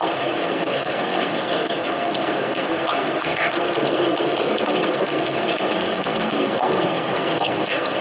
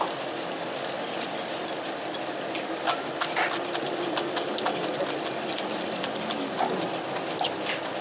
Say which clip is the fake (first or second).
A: first